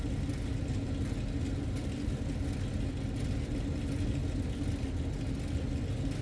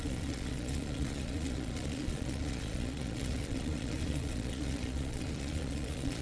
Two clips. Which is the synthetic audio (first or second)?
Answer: second